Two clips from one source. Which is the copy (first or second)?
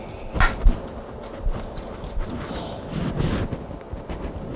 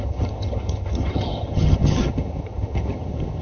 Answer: second